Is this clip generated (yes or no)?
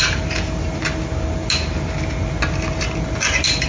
no